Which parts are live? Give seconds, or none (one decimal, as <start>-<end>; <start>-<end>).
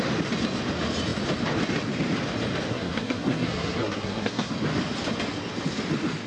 0.0-2.7; 4.5-6.3